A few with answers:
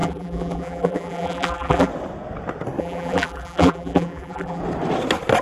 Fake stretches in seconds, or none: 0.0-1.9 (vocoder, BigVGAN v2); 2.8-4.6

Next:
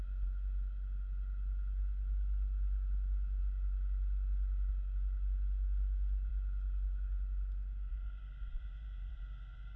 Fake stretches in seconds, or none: 8.5-9.1 (vocoder, BigVGAN v2)

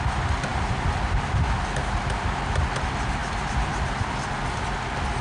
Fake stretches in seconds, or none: 3.2-4.3 (vocoder, BigVGAN v2)

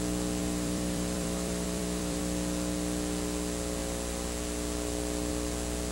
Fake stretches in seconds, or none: 0.4-2.2 (vocoder, BigVGAN v2)

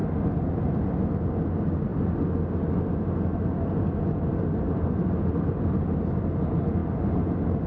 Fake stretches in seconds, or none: 0.0-0.6 (vocoder, BigVGAN v2); 1.9-6.2